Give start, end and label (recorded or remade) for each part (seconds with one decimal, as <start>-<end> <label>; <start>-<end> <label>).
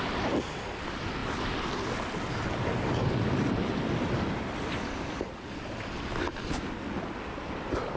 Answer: 0.0-8.0 recorded